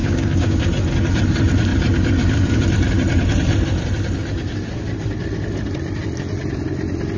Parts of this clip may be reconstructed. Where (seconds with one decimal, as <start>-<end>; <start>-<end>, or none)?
0.0-0.7